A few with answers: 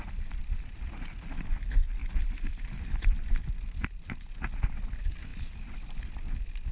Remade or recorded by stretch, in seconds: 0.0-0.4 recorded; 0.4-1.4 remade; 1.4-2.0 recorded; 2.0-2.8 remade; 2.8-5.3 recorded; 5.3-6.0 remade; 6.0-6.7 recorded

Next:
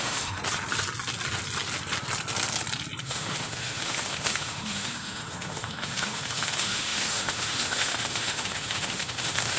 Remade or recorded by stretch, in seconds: 0.0-0.4 remade; 0.4-3.0 recorded; 3.0-9.6 remade

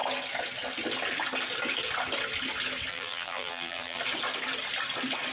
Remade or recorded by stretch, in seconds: 0.0-2.9 recorded; 2.9-4.0 remade; 4.0-5.3 recorded

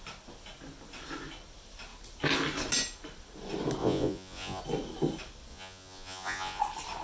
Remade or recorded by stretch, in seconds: 0.0-3.8 recorded; 3.8-4.6 remade; 4.6-5.5 recorded; 5.5-6.6 remade; 6.6-7.0 recorded

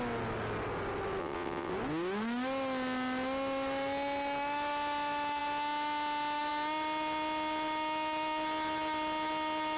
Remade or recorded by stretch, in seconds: 0.0-1.2 recorded; 1.2-1.7 remade; 1.7-9.8 recorded

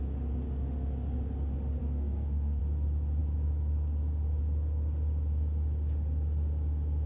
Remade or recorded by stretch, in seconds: 0.0-1.8 recorded; 1.8-2.6 remade; 2.6-7.1 recorded

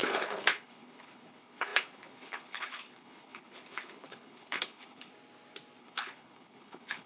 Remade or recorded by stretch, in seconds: 0.0-5.1 remade; 5.1-5.8 recorded; 5.8-7.1 remade

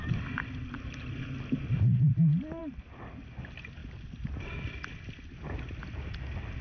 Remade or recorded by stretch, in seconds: 0.0-3.8 recorded; 3.8-4.7 remade; 4.7-6.6 recorded